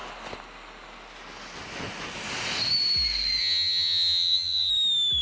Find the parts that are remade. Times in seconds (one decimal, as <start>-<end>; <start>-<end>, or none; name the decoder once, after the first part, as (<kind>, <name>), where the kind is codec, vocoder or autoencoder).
3.4-4.7 (vocoder, HiFi-GAN)